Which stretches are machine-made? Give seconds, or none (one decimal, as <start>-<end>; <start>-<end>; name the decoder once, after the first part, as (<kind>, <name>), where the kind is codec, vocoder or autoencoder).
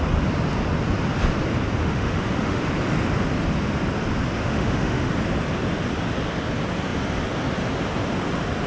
1.8-2.6 (autoencoder, DAC-VAE); 4.4-5.1